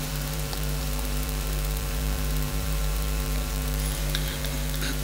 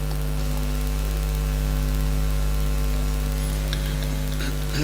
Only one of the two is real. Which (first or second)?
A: second